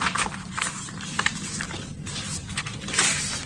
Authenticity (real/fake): real